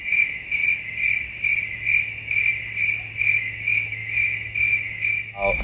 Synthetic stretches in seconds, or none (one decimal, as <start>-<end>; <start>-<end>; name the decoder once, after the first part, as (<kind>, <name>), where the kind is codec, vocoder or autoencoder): 0.0-0.6 (autoencoder, DAC-VAE); 2.0-2.5; 3.2-5.6